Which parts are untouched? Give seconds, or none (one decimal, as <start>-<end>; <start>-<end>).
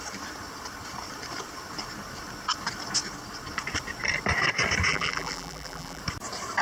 0.0-4.9; 6.0-6.6